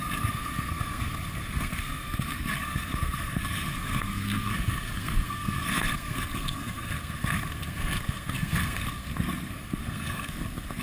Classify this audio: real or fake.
fake